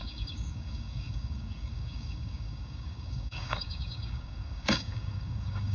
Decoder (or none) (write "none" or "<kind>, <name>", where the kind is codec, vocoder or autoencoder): codec, DAC